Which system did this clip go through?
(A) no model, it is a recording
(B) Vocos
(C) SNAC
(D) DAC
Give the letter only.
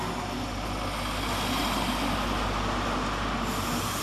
A